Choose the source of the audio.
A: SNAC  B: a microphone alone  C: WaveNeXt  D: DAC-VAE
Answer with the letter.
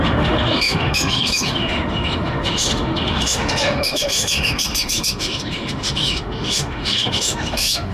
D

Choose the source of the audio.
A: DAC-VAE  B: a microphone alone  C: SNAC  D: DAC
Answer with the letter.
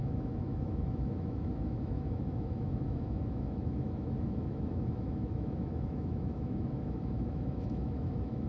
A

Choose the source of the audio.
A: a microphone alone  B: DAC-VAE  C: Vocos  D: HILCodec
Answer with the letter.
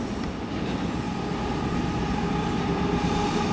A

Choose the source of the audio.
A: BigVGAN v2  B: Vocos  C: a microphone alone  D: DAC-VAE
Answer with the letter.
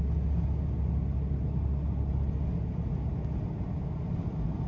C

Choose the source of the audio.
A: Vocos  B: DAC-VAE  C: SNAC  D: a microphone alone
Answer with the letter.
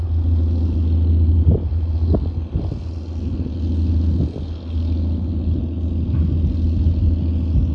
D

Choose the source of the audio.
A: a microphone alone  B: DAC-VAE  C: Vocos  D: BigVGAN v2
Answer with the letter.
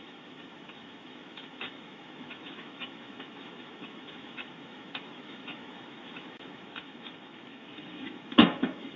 B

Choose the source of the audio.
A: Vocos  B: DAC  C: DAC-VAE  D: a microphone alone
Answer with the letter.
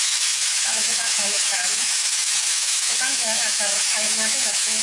C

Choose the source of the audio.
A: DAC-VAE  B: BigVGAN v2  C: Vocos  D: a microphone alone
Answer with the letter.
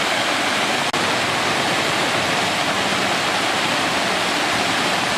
D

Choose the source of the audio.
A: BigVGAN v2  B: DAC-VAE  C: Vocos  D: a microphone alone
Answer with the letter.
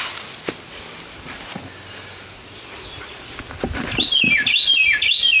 D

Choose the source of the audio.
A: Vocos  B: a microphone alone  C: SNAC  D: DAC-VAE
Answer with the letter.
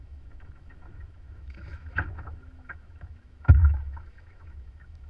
D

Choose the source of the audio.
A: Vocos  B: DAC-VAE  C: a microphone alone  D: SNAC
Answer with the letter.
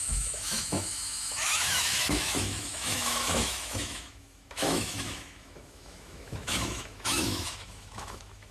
B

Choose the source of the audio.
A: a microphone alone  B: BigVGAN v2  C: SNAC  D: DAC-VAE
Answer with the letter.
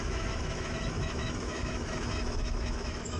D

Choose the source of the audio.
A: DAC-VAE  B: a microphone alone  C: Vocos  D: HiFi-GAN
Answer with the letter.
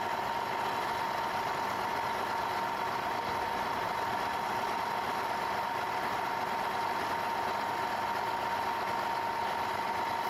B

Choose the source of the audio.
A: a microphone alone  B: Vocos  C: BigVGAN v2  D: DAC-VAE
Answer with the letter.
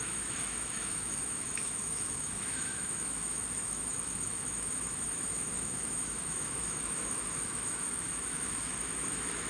D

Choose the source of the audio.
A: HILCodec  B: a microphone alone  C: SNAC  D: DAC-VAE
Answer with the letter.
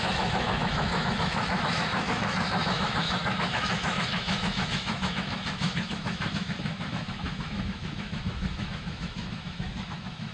D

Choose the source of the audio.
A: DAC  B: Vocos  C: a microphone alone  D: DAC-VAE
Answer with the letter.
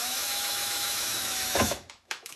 D